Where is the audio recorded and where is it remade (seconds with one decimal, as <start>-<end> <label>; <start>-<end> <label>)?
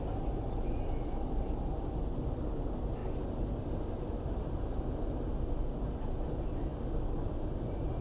0.0-8.0 recorded